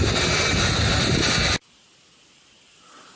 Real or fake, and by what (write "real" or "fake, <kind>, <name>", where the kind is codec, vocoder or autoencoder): real